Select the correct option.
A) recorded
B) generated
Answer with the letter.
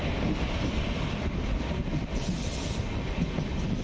A